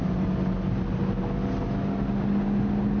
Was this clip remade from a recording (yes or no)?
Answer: no